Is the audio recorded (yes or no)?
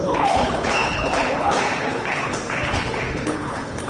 no